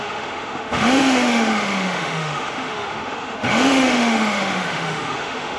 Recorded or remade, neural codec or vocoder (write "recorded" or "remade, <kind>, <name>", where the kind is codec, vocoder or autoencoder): remade, autoencoder, DAC-VAE